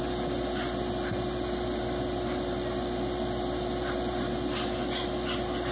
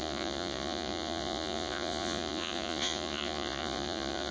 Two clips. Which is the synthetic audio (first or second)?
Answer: second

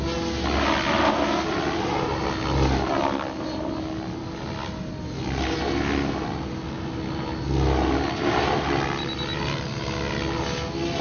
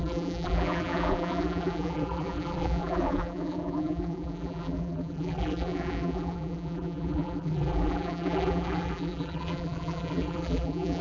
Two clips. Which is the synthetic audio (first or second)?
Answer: second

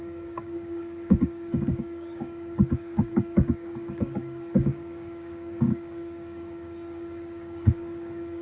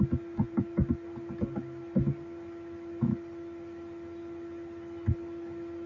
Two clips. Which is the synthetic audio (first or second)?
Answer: first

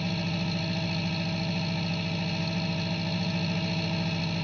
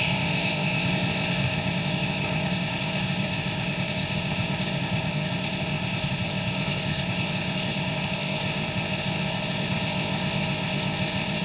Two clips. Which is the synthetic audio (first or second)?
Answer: second